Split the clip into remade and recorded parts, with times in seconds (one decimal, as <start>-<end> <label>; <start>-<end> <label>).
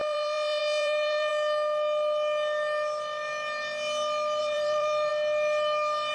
0.0-1.3 remade; 1.3-4.4 recorded; 4.4-5.1 remade; 5.1-6.1 recorded